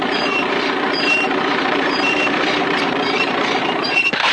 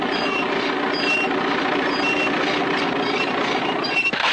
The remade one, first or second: first